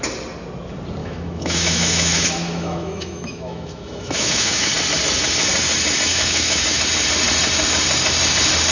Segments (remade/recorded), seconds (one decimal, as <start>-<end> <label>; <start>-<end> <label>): 0.0-1.0 recorded; 1.0-4.7 remade; 4.7-6.1 recorded; 6.1-6.8 remade; 6.8-8.7 recorded